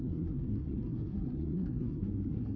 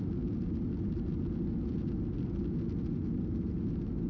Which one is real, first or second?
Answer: second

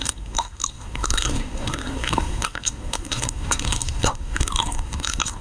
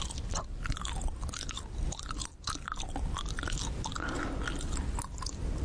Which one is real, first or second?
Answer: second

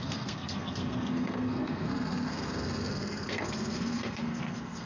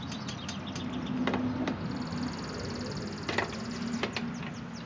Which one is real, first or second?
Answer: second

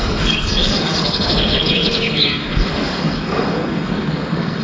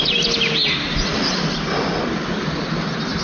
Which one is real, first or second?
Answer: second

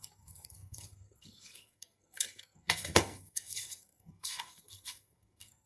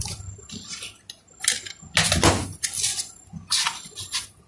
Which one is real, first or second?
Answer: second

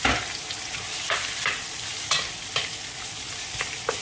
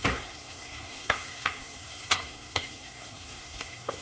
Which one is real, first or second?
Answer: first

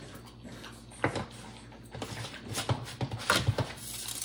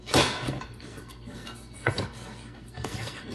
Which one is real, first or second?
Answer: first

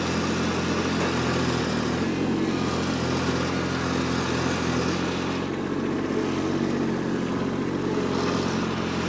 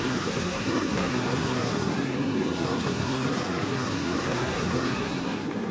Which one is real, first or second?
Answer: first